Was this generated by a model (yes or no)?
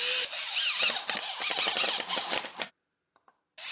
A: no